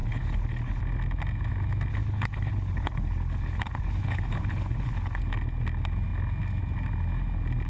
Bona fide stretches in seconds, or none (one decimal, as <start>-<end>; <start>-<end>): 0.8-1.9; 5.2-7.7